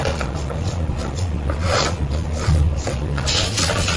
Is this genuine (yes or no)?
no